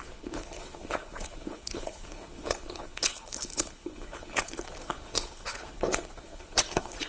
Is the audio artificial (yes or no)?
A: yes